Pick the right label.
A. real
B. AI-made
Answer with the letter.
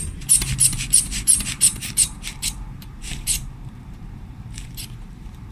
B